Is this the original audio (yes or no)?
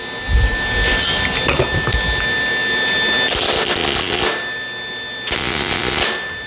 yes